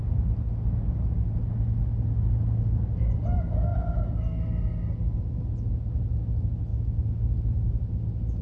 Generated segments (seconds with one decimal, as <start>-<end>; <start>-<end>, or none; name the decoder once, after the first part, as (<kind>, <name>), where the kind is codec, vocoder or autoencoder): none